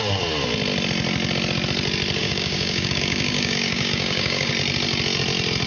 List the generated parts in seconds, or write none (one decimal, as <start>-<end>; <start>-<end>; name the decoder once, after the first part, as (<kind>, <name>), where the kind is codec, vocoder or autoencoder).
2.2-4.5 (codec, DAC)